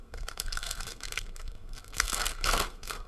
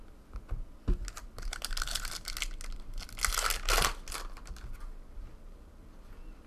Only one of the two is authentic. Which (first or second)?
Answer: second